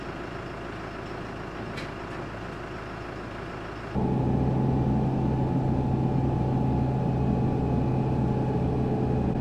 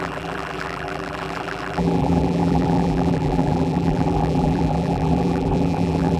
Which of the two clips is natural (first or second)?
first